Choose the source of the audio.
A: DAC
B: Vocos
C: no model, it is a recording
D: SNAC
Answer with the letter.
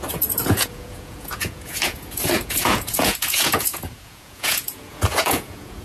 B